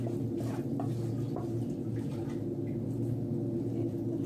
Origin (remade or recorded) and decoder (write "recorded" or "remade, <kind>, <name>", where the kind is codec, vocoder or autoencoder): recorded